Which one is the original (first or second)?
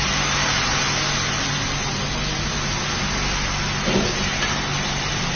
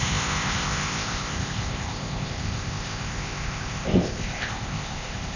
first